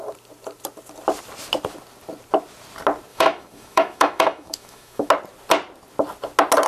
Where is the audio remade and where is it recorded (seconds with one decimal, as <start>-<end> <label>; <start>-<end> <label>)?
0.0-3.1 recorded; 3.1-5.1 remade; 5.1-6.7 recorded